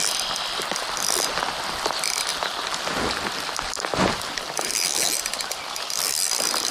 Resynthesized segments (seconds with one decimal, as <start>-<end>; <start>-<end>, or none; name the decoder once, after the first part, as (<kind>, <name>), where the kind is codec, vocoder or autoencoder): none